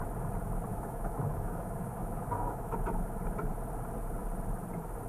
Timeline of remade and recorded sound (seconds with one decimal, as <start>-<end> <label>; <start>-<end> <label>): 0.0-0.7 recorded; 0.7-2.8 remade; 2.8-5.1 recorded